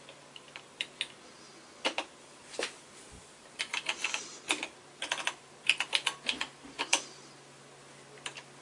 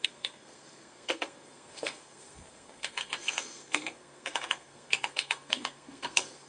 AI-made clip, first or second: second